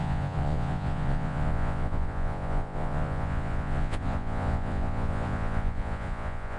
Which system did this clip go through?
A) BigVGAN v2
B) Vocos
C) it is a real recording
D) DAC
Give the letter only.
B